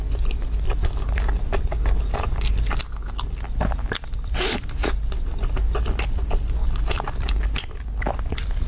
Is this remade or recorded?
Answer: recorded